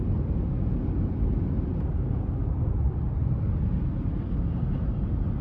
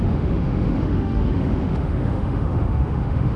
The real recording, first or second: first